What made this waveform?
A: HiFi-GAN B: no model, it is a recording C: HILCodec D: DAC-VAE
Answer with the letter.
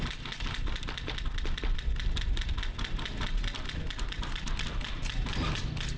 B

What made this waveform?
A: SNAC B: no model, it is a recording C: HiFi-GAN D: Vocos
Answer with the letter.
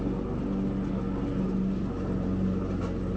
B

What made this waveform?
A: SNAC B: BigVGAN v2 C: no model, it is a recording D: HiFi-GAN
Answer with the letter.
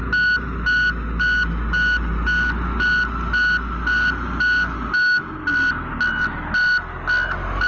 C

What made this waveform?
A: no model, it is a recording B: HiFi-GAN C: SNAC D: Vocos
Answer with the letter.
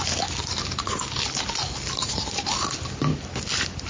A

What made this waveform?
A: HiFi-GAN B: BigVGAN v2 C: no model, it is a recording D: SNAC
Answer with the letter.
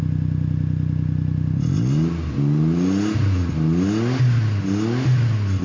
C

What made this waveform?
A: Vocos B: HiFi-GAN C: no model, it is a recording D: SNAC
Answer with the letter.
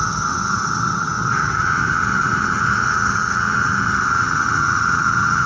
B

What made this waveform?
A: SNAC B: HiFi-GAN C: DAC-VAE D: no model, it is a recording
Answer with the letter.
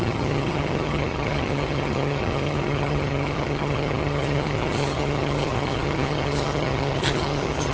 B